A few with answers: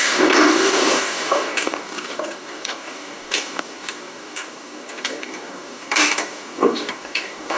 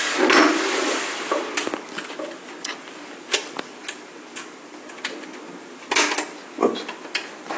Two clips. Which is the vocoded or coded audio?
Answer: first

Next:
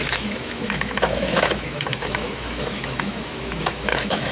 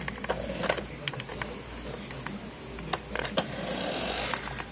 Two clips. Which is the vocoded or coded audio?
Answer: first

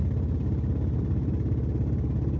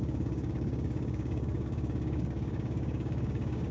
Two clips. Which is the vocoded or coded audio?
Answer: second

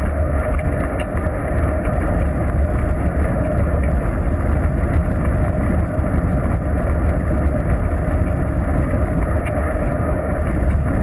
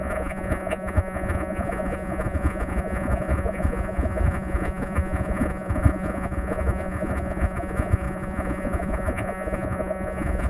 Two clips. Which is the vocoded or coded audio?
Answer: second